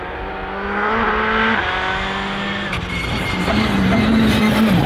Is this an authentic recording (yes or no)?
yes